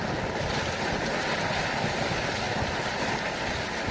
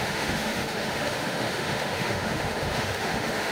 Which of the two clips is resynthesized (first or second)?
second